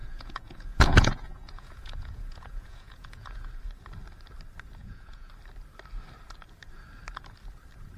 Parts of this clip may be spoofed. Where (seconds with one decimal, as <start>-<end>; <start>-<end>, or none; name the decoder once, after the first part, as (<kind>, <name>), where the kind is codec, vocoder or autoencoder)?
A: 0.0-3.5 (vocoder, Vocos); 4.8-5.3